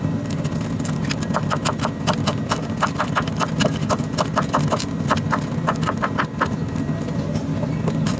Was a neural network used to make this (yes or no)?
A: no